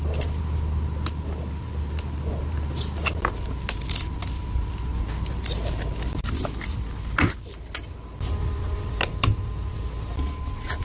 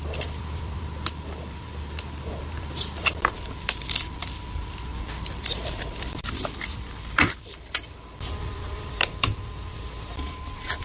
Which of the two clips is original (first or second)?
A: first